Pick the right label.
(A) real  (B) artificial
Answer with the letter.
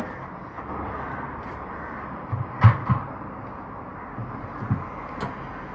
A